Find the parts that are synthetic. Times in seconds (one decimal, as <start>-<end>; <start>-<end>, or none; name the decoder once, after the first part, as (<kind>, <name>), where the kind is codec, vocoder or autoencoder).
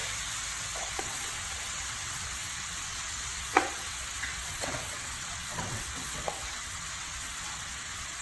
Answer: 0.8-8.2 (vocoder, WaveNeXt)